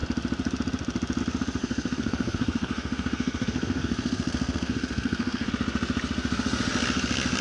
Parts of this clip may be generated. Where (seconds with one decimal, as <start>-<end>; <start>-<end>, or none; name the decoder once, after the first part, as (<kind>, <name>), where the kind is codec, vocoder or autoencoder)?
1.6-5.5 (codec, SNAC)